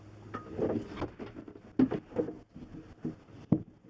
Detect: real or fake real